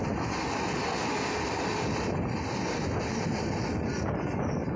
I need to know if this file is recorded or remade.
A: recorded